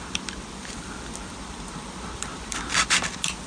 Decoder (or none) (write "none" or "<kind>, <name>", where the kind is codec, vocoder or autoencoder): vocoder, BigVGAN v2